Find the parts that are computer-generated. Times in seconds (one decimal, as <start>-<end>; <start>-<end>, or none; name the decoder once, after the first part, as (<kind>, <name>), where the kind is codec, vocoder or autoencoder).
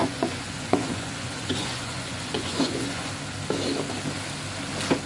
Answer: 0.0-3.1 (vocoder, Vocos)